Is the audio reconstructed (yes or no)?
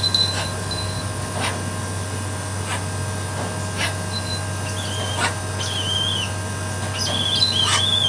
no